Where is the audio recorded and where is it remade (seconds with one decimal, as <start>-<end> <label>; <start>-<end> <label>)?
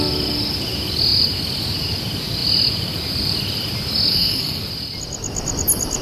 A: 0.0-4.1 recorded; 4.1-4.6 remade; 4.6-6.0 recorded